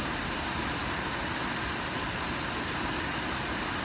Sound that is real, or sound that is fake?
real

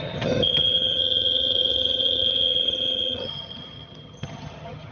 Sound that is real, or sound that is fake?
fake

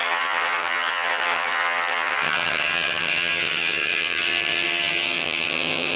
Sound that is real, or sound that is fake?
fake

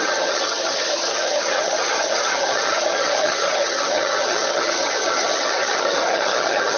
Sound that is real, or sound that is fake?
fake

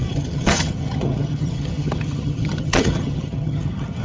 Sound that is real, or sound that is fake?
fake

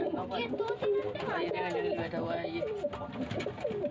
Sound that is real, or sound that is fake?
real